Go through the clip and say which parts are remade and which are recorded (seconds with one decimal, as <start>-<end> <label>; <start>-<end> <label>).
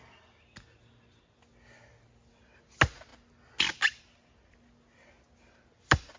0.0-6.2 recorded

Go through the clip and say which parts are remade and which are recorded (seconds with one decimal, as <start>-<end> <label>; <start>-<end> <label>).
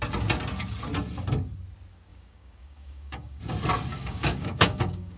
0.0-2.1 recorded; 2.1-3.4 remade; 3.4-3.9 recorded; 3.9-5.2 remade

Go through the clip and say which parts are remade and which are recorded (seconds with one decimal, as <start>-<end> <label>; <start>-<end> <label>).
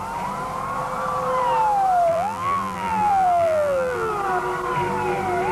0.0-2.1 recorded; 2.1-4.1 remade; 4.1-5.5 recorded